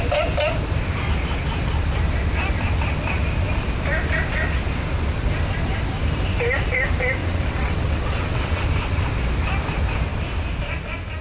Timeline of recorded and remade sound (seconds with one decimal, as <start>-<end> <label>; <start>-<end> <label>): 0.0-7.2 recorded; 7.2-8.6 remade; 8.6-11.2 recorded